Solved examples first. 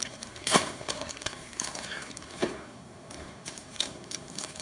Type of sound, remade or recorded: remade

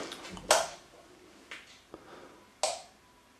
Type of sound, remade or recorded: recorded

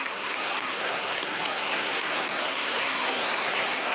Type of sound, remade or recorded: remade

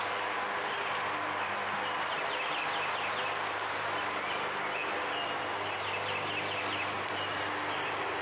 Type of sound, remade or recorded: recorded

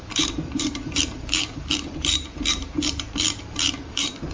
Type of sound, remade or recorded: remade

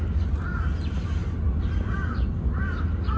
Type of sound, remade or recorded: recorded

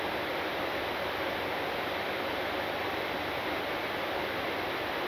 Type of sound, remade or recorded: recorded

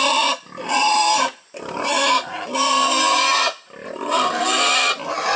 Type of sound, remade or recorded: recorded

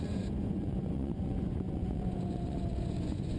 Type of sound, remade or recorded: remade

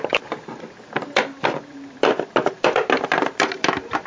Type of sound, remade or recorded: recorded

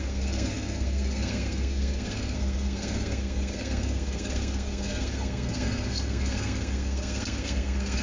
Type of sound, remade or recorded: remade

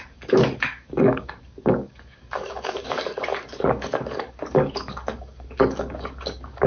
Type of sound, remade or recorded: remade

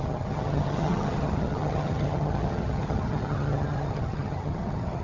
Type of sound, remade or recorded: remade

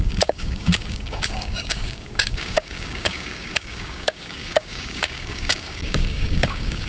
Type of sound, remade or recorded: remade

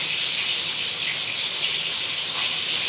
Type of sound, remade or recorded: recorded